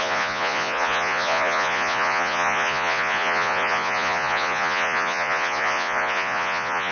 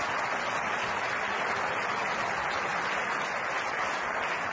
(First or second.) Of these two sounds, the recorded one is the second